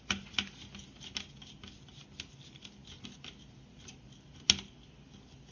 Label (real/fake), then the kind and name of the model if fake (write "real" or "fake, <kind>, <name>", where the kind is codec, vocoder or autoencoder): real